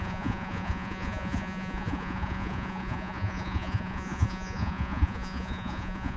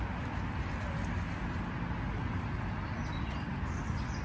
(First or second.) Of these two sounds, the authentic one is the second